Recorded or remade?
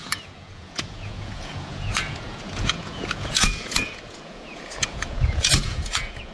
remade